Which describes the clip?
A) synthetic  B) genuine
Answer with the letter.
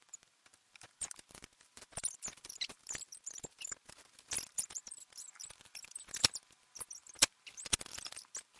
B